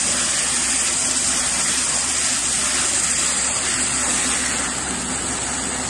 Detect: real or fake real